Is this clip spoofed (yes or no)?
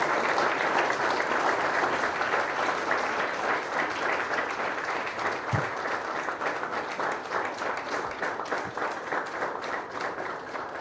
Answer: no